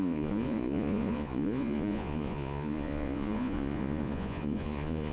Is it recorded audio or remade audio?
remade